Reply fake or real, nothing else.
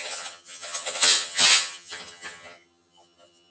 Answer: fake